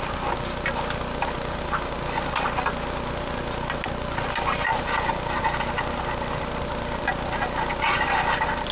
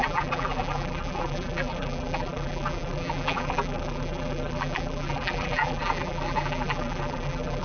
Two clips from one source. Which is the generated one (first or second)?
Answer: second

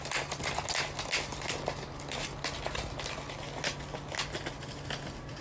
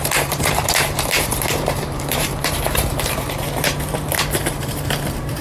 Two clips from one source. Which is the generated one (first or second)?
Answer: second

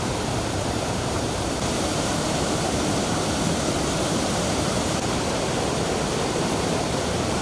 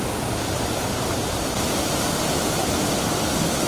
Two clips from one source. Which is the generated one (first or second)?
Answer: first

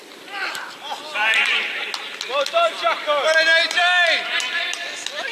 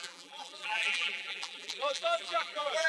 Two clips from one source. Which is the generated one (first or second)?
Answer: second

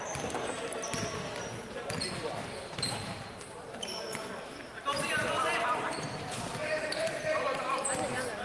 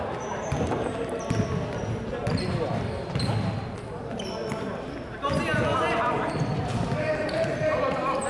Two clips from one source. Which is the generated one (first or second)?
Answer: first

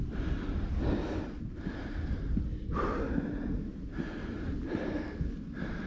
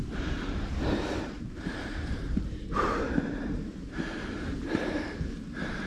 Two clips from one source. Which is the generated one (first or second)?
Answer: second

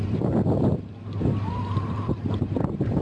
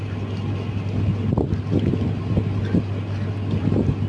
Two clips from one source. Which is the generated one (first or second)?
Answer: first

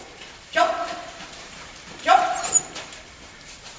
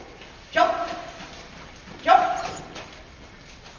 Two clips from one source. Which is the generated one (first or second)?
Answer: first